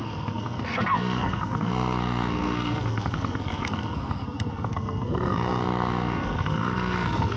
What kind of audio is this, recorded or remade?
remade